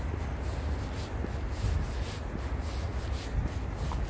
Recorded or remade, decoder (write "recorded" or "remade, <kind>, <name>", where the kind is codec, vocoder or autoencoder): recorded